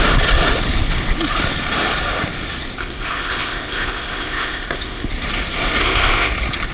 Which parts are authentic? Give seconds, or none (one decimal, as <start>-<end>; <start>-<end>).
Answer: 0.0-2.8; 5.1-5.8; 6.3-6.7